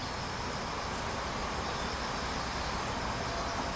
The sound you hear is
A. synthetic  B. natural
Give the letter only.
B